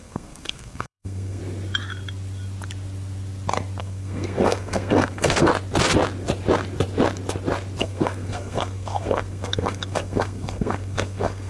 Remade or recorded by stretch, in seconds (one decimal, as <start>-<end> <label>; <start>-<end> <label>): 0.0-1.4 remade; 1.4-3.8 recorded; 3.8-5.5 remade; 5.5-7.8 recorded; 7.8-11.5 remade